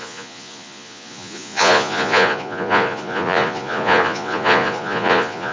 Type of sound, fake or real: fake